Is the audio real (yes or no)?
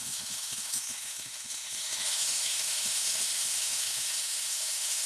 no